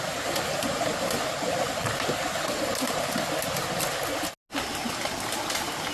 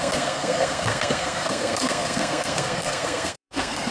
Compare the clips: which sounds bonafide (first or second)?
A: first